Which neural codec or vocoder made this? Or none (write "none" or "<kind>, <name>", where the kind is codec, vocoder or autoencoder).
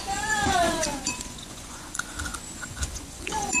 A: vocoder, Vocos